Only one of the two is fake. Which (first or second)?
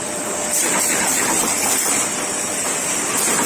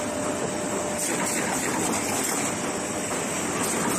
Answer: first